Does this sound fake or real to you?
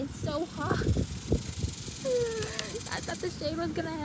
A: real